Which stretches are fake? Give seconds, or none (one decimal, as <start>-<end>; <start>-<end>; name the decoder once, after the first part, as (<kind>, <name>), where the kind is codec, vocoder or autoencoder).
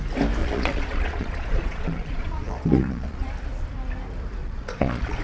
0.4-3.3 (vocoder, Vocos); 4.4-5.2